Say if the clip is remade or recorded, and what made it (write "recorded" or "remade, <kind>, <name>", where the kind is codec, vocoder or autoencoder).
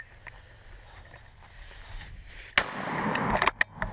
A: recorded